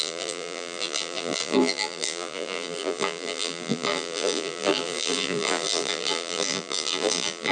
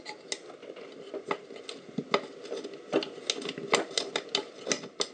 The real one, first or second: second